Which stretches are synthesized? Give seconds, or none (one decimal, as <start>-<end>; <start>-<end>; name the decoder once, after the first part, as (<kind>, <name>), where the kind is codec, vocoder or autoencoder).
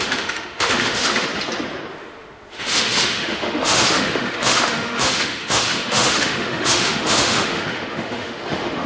0.0-1.3 (autoencoder, DAC-VAE); 1.9-8.9